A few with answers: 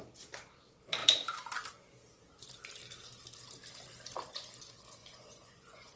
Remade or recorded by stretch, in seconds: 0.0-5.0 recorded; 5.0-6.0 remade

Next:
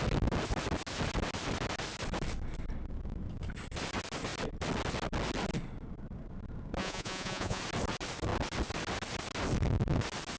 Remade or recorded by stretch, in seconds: 0.0-6.8 recorded; 6.8-7.6 remade; 7.6-10.4 recorded